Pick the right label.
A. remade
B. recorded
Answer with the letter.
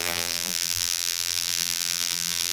A